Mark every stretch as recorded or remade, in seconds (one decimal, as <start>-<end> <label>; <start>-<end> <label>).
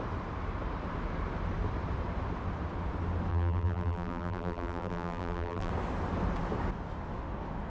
0.0-3.3 recorded; 3.3-5.7 remade; 5.7-7.7 recorded